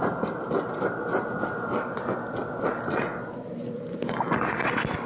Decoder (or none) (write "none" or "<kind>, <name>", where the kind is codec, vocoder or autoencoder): none